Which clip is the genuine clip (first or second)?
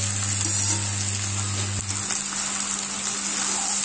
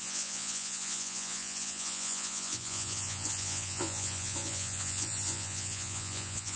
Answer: first